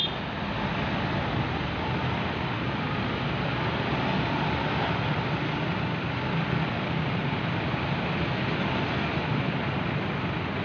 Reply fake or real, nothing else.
real